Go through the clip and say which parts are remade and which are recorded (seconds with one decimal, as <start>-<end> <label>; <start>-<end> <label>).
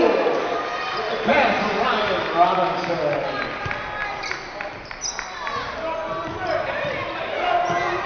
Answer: 0.0-1.3 recorded; 1.3-1.8 remade; 1.8-6.3 recorded; 6.3-6.9 remade; 6.9-8.1 recorded